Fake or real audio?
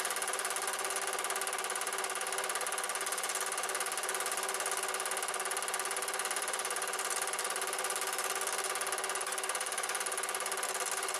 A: real